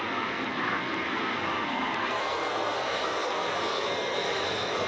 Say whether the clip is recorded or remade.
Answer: remade